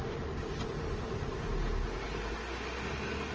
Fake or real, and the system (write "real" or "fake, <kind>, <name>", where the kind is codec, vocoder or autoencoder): real